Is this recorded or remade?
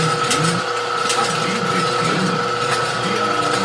recorded